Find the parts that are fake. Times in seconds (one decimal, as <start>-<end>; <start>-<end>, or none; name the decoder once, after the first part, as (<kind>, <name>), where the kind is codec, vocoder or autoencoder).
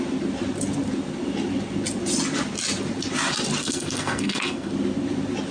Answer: 3.6-4.7 (codec, SNAC)